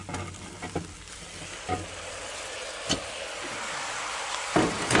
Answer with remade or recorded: recorded